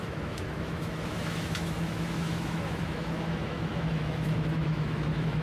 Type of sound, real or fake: fake